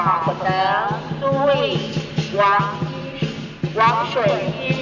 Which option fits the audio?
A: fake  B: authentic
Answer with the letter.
B